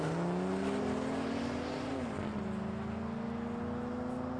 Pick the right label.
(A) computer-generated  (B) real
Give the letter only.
B